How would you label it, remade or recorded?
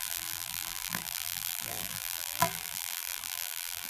remade